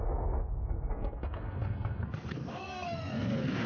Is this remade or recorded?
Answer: remade